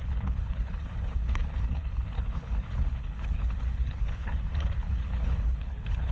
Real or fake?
fake